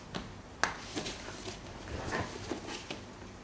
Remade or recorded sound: recorded